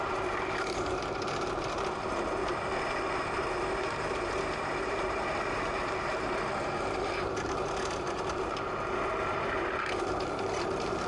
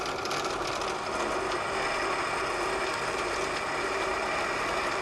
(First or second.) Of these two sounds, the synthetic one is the first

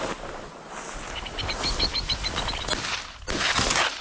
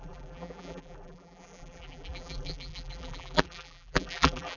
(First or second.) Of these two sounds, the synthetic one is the second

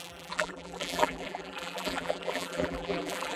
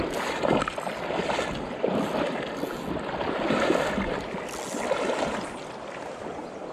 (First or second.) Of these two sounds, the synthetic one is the first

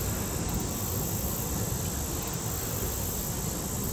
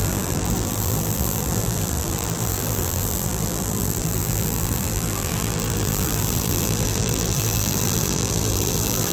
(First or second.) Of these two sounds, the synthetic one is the second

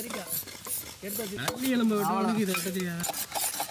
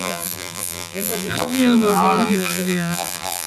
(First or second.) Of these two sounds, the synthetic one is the second